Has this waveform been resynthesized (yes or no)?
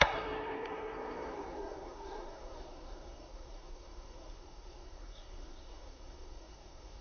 yes